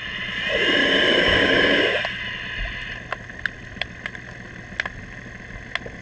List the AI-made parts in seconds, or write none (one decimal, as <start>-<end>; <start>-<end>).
0.8-2.0